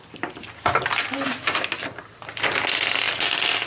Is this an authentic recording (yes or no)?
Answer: yes